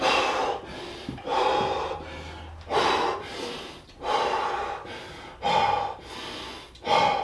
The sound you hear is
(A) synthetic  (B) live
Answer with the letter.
B